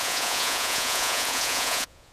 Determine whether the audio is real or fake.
fake